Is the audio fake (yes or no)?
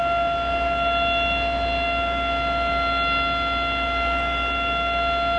no